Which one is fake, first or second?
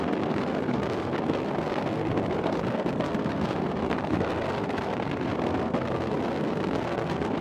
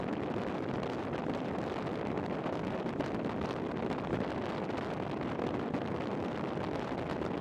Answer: first